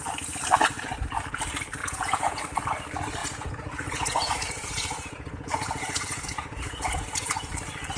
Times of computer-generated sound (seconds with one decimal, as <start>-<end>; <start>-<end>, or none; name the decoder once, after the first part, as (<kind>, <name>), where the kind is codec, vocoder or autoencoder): 1.8-2.4 (vocoder, Vocos); 3.2-7.5

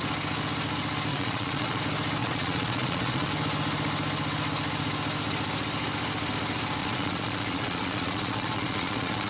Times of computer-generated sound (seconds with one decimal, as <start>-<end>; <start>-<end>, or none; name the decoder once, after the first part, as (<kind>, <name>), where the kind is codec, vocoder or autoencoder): 1.1-1.8 (vocoder, Vocos); 2.2-3.3; 6.8-9.3

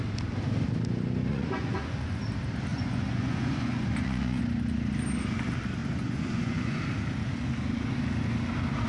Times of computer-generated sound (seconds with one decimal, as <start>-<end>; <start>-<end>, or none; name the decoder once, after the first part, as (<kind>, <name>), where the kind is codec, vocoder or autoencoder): 1.3-2.2 (vocoder, Vocos); 2.7-4.4; 5.8-6.8

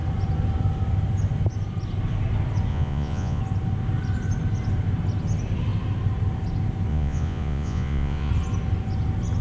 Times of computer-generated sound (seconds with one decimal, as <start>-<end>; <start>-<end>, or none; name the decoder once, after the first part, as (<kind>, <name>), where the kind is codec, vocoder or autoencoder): 2.7-3.4 (vocoder, Vocos); 6.9-8.3

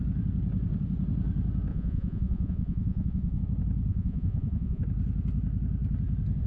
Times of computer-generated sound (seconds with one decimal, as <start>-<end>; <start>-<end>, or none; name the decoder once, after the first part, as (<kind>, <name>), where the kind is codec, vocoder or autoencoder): 1.7-3.4 (vocoder, Vocos); 3.9-4.8

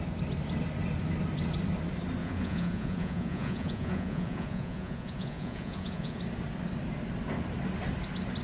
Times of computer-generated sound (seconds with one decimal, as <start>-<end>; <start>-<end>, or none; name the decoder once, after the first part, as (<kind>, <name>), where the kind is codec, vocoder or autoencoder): 2.2-6.2 (vocoder, Vocos)